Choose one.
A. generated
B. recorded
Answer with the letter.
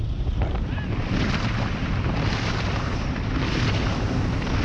A